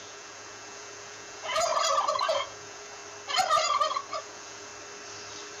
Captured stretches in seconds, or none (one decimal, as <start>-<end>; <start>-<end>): 1.7-2.2; 3.0-4.2; 4.7-5.6